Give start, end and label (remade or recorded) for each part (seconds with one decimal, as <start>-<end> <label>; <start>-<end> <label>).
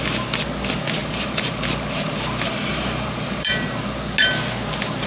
0.0-1.0 recorded; 1.0-1.6 remade; 1.6-2.7 recorded; 2.7-3.8 remade; 3.8-5.1 recorded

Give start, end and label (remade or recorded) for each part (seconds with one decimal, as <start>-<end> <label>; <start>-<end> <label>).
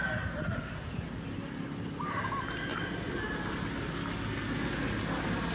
0.0-5.5 recorded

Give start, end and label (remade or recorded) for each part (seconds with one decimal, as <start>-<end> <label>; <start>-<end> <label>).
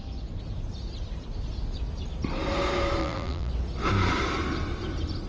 0.0-3.0 recorded; 3.0-3.5 remade; 3.5-5.3 recorded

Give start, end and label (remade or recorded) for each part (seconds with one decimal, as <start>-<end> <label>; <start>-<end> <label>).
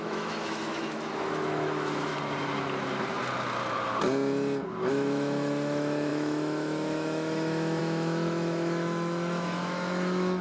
0.0-2.1 remade; 2.1-4.9 recorded; 4.9-10.4 remade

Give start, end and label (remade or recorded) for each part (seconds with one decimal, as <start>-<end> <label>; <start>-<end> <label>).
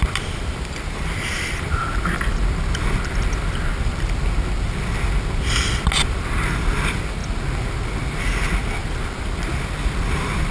0.0-1.8 remade; 1.8-6.0 recorded; 6.0-7.2 remade; 7.2-8.9 recorded; 8.9-10.5 remade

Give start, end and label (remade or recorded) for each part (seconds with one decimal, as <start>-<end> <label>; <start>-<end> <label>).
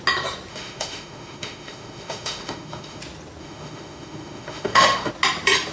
0.0-0.5 recorded; 0.5-3.0 remade; 3.0-3.4 recorded; 3.4-5.1 remade; 5.1-5.7 recorded